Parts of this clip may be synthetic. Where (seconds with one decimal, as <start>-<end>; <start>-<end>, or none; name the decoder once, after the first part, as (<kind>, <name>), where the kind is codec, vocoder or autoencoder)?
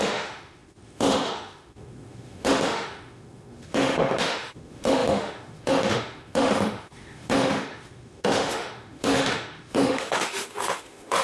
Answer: 0.0-11.2 (autoencoder, DAC-VAE)